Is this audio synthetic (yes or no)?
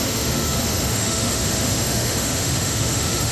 yes